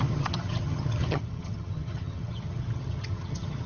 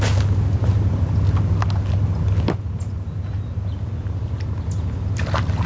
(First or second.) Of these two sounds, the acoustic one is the second